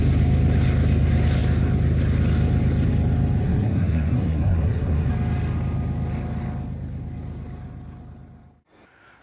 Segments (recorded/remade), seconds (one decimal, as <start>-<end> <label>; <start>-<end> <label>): 0.0-3.4 recorded; 3.4-5.1 remade; 5.1-9.2 recorded